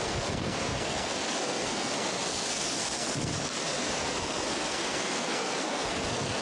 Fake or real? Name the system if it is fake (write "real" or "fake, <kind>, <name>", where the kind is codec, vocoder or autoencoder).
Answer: fake, codec, SNAC